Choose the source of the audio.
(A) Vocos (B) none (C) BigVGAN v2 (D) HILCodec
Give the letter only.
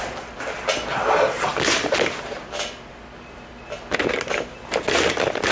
B